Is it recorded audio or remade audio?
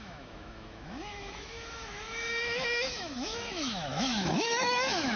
remade